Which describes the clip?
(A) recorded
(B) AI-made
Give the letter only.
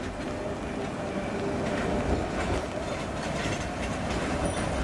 A